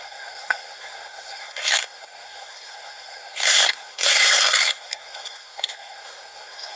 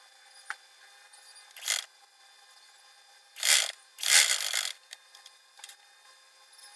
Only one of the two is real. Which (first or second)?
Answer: second